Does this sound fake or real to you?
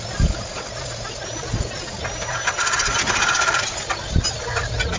real